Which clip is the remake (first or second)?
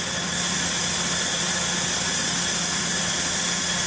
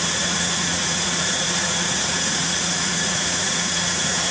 second